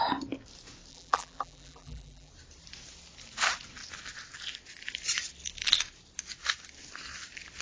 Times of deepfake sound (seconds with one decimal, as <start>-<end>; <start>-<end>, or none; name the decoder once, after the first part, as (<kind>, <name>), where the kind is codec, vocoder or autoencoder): 0.9-2.3 (vocoder, BigVGAN v2)